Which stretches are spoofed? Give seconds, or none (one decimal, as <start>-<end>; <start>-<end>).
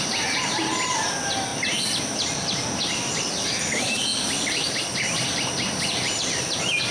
4.1-5.2